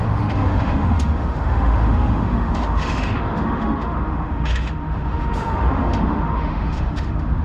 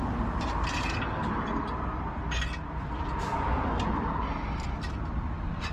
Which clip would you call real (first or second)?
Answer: second